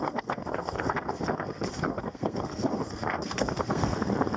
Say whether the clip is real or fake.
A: fake